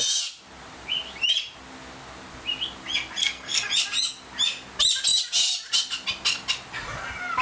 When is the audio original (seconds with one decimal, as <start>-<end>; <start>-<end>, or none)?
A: 0.0-3.2; 3.7-7.4